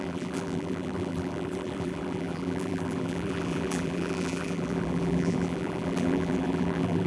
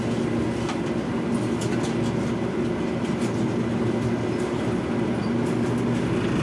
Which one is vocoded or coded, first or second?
first